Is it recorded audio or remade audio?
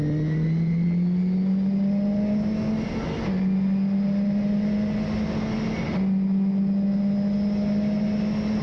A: recorded